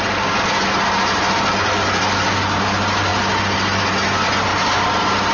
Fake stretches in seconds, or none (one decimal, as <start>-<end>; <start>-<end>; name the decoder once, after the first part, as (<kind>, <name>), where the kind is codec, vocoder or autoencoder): none